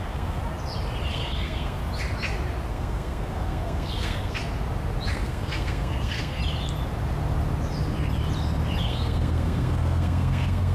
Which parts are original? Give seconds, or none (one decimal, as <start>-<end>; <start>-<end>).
0.4-1.1; 1.8-2.7; 4.4-5.1; 6.4-8.8